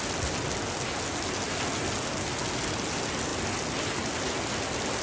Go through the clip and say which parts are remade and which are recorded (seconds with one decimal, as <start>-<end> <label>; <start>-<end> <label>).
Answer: 0.0-5.0 recorded